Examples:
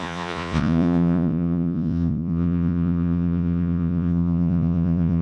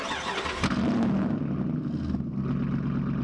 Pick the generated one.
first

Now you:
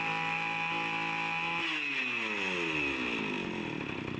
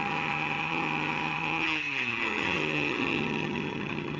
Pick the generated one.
second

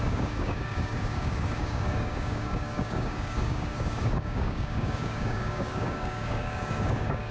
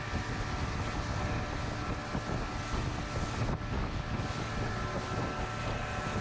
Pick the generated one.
first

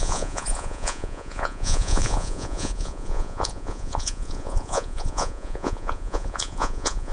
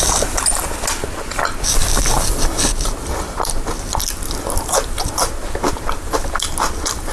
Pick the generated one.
first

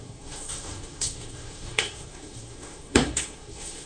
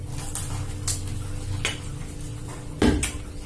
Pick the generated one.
first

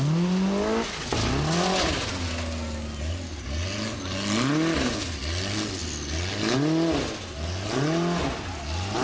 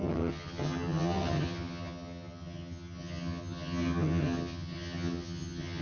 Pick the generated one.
second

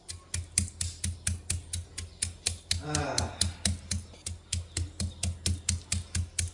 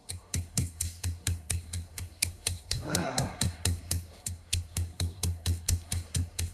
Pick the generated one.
second